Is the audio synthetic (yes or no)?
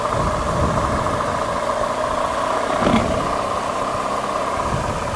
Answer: no